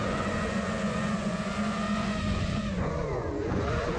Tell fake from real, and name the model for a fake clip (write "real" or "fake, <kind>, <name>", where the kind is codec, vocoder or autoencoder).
fake, vocoder, Vocos